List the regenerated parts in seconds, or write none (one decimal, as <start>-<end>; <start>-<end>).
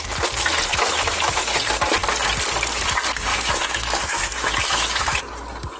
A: 0.7-1.6; 3.3-5.2